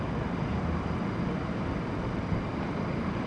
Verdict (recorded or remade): remade